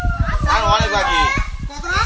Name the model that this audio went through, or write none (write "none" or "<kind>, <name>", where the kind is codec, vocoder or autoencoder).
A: none